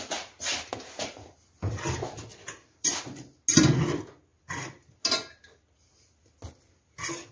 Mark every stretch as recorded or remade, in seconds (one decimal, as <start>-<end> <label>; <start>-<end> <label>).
0.0-2.3 recorded; 2.3-3.0 remade; 3.0-4.3 recorded; 4.3-4.9 remade; 4.9-7.3 recorded